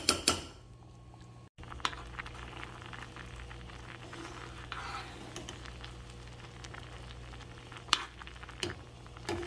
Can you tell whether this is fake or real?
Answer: real